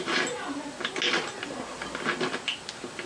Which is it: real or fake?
real